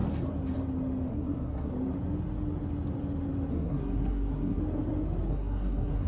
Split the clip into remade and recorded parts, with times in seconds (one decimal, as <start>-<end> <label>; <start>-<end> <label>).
0.0-1.1 recorded; 1.1-1.7 remade; 1.7-3.5 recorded; 3.5-4.6 remade; 4.6-5.3 recorded; 5.3-6.1 remade

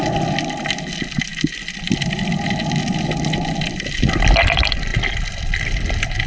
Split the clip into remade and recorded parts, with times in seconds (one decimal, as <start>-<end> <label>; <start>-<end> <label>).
0.0-6.3 recorded

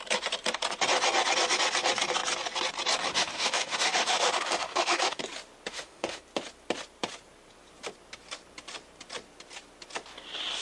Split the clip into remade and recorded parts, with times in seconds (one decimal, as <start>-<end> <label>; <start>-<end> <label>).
0.0-3.1 recorded; 3.1-5.2 remade; 5.2-5.7 recorded; 5.7-6.2 remade; 6.2-10.6 recorded

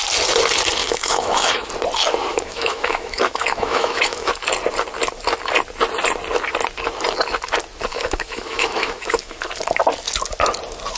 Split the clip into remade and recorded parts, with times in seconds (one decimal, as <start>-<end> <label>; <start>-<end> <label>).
0.0-0.8 recorded; 0.8-1.7 remade; 1.7-2.3 recorded; 2.3-4.3 remade; 4.3-7.9 recorded; 7.9-9.5 remade; 9.5-11.0 recorded

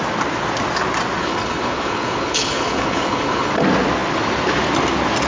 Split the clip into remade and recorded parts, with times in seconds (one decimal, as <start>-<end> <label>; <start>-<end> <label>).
0.0-1.2 recorded; 1.2-3.5 remade; 3.5-5.3 recorded

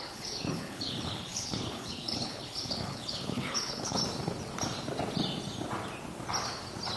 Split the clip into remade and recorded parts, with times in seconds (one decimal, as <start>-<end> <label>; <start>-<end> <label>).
0.0-4.0 remade; 4.0-7.0 recorded

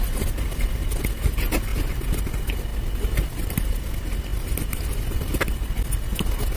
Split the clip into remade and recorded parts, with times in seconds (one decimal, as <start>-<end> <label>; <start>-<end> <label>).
0.0-1.7 recorded; 1.7-2.3 remade; 2.3-2.7 recorded; 2.7-3.7 remade; 3.7-6.6 recorded